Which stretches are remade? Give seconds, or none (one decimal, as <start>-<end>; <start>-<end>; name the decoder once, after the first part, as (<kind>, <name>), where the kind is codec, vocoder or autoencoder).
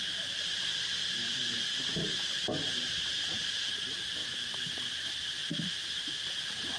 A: 0.0-1.4 (vocoder, BigVGAN v2); 1.9-6.8